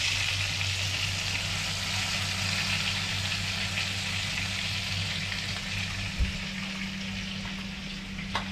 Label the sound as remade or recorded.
recorded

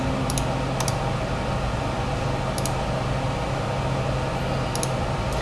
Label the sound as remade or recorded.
recorded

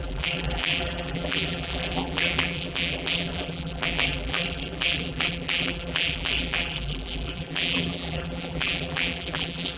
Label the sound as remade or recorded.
remade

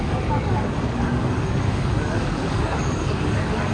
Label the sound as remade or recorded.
remade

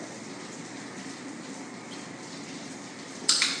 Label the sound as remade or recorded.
remade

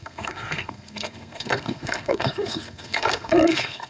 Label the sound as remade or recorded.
remade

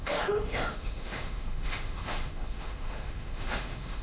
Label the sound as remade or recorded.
remade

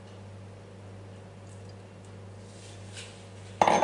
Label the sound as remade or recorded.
recorded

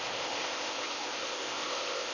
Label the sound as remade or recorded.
remade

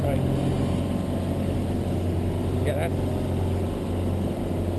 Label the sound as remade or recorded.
recorded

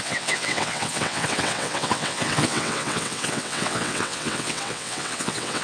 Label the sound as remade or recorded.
remade